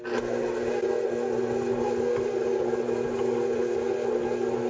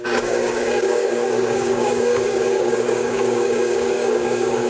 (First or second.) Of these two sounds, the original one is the first